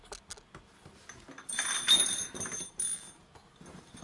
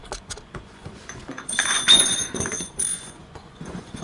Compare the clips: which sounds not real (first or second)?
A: second